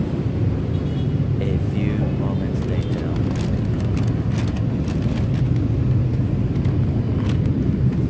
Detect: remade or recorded recorded